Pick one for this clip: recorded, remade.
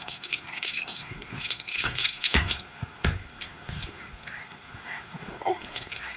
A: remade